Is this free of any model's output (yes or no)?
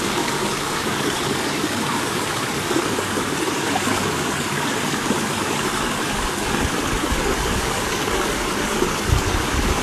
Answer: no